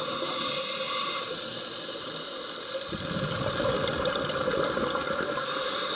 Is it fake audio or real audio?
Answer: real